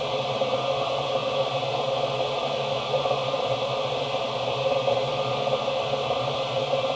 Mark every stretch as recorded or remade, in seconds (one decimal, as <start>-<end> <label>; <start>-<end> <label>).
0.0-7.0 recorded